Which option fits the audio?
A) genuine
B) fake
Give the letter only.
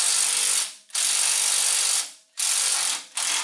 A